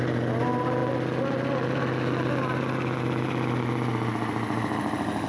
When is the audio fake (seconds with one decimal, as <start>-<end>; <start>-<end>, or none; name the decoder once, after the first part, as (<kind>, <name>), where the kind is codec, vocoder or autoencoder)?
none